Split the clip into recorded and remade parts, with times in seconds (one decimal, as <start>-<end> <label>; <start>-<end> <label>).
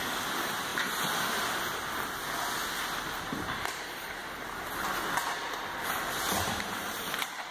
0.0-0.7 remade; 0.7-3.0 recorded; 3.0-4.2 remade; 4.2-5.8 recorded; 5.8-7.5 remade